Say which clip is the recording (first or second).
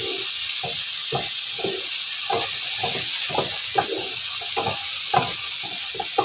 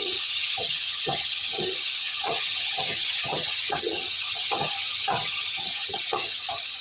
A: first